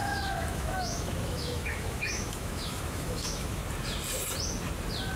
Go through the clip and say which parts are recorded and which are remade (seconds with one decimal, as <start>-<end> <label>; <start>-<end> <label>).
0.0-3.6 remade; 3.6-5.2 recorded